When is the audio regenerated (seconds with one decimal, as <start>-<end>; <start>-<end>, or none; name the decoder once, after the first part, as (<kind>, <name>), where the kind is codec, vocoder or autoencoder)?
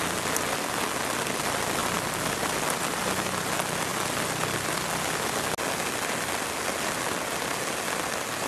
none